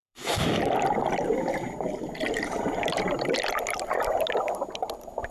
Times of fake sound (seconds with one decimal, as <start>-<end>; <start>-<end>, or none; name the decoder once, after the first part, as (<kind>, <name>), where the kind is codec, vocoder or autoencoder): 0.0-0.6 (codec, DAC)